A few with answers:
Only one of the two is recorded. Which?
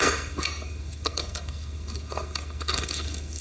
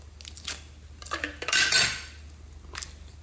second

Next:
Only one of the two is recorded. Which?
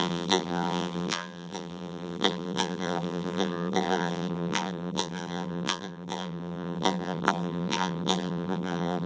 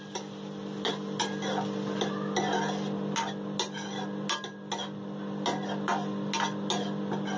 second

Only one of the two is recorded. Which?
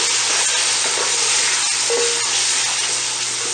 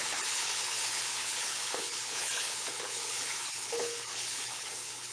first